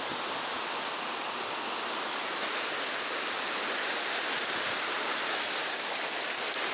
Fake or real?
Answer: real